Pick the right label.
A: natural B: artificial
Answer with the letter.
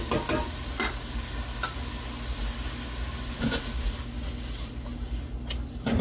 A